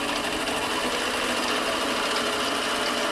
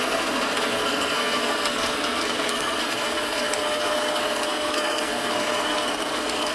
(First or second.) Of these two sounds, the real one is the first